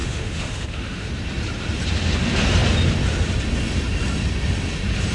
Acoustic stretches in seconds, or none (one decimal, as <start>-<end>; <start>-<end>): 1.1-5.1

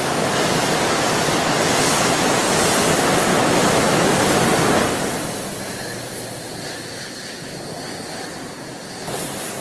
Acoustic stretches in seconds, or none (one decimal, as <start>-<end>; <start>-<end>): 0.0-3.3; 4.3-9.6

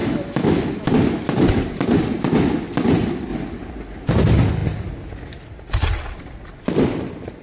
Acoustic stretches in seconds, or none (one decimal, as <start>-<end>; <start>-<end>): 0.9-7.4

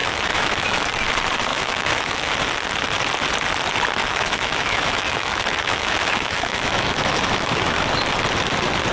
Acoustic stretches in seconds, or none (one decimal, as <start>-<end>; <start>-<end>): 0.9-1.5; 2.3-4.0; 7.8-8.9

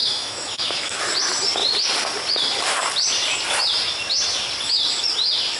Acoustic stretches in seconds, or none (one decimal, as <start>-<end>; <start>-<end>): 1.0-5.6

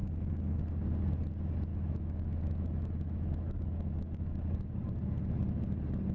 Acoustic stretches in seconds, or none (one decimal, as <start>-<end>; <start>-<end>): 0.6-1.7; 4.9-6.1

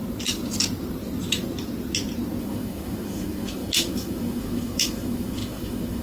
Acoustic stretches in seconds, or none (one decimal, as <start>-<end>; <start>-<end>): 0.0-2.4

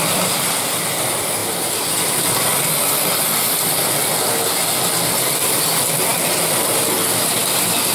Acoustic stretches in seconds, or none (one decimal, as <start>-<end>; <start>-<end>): 0.0-7.9